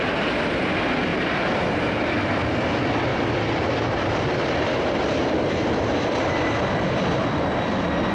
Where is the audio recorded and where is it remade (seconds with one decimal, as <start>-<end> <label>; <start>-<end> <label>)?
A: 0.0-1.1 recorded; 1.1-2.4 remade; 2.4-3.1 recorded; 3.1-6.7 remade; 6.7-8.1 recorded